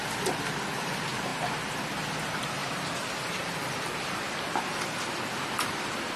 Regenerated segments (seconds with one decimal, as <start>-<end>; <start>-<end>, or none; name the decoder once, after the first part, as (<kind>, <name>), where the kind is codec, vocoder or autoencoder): 1.3-1.8 (vocoder, BigVGAN v2); 2.6-5.0

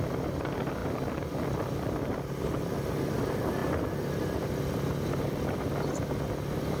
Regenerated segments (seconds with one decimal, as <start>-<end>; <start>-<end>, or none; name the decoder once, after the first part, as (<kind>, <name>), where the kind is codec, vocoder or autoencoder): none

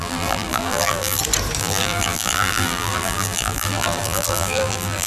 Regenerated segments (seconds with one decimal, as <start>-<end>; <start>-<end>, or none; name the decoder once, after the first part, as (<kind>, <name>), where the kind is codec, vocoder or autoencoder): 0.0-1.2 (vocoder, BigVGAN v2); 1.6-5.1

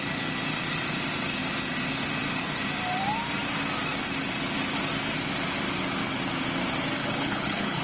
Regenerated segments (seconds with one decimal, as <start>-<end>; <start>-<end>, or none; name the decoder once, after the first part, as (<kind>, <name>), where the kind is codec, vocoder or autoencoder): 7.0-7.8 (codec, HILCodec)

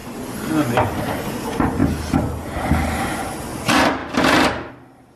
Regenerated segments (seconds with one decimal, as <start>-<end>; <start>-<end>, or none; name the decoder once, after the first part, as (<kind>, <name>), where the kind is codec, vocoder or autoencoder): none